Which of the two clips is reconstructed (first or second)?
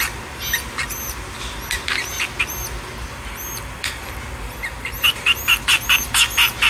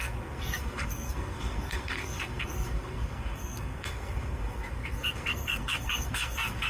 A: second